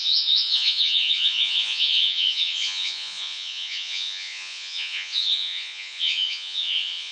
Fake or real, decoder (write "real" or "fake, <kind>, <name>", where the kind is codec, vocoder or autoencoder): fake, vocoder, Vocos